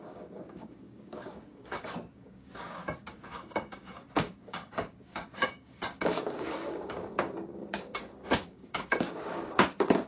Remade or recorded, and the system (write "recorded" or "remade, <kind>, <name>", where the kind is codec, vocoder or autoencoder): remade, codec, DAC